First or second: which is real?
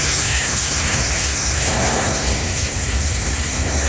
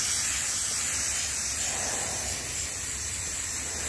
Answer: second